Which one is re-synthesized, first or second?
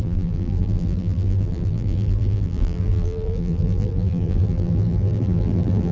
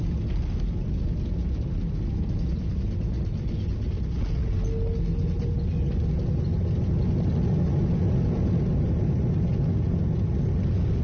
first